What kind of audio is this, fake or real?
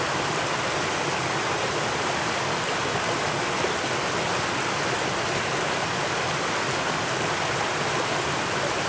real